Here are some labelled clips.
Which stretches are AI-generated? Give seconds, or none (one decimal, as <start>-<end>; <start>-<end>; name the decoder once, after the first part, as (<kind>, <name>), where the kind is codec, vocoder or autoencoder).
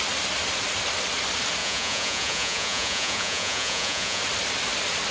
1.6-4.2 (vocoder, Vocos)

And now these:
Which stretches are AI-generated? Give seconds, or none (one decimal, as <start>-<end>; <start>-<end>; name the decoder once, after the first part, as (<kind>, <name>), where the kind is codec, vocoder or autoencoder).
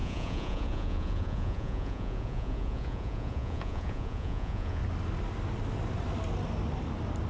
0.0-4.8 (vocoder, Vocos)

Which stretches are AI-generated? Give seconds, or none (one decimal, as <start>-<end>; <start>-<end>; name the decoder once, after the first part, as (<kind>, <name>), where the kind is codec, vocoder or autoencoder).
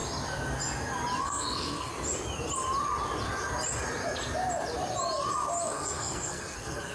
1.2-1.9 (codec, SNAC); 5.6-6.9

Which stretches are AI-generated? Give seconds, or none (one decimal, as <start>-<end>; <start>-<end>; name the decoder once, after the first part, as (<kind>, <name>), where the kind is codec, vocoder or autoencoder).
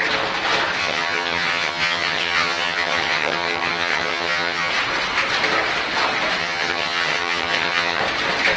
0.8-4.7 (vocoder, HiFi-GAN); 6.4-8.0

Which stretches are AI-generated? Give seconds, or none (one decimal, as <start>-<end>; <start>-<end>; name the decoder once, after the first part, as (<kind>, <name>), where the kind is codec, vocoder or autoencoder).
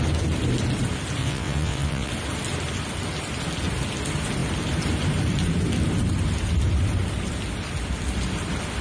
1.2-2.1 (vocoder, WaveNeXt)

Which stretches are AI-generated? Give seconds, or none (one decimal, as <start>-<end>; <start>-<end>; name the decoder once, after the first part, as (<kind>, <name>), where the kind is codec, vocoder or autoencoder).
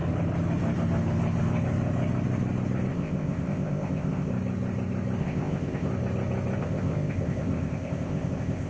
2.9-4.3 (codec, ZipCodec); 5.2-5.9; 6.6-8.7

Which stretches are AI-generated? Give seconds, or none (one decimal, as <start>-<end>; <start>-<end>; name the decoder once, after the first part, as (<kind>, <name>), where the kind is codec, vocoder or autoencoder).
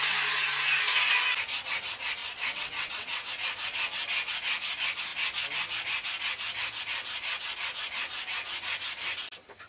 2.2-3.3 (vocoder, WaveNeXt)